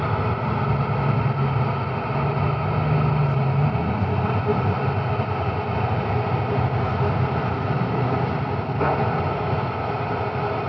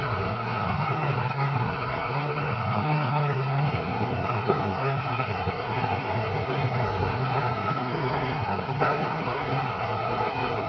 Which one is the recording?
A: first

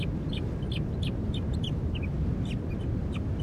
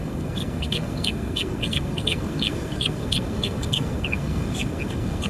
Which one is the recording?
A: first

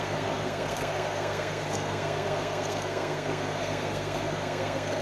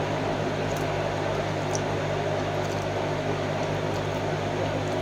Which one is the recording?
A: second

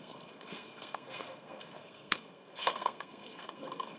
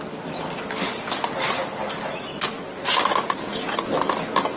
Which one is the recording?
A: second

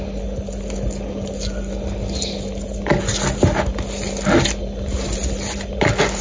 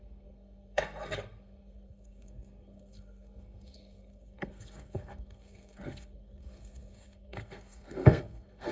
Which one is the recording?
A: first